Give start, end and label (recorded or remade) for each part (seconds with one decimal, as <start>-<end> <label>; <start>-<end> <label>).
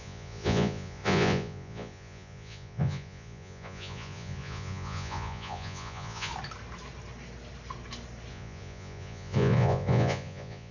0.0-6.3 remade; 6.3-8.3 recorded; 8.3-10.7 remade